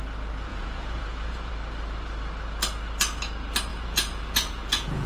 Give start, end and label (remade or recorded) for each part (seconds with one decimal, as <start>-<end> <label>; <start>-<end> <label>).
0.0-0.5 recorded; 0.5-1.5 remade; 1.5-3.7 recorded; 3.7-5.1 remade